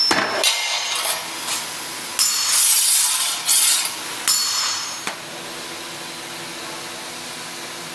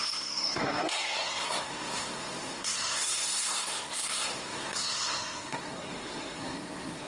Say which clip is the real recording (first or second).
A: first